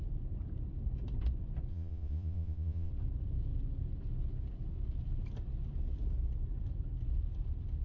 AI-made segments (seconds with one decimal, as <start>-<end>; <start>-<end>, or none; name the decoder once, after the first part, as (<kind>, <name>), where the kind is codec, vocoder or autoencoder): 1.7-2.9 (vocoder, Vocos)